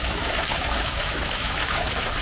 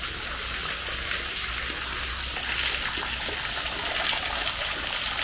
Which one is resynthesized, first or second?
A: first